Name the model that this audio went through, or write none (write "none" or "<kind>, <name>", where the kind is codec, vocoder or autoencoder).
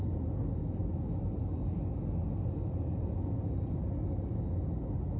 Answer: none